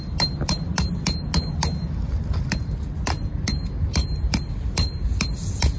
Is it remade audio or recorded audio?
recorded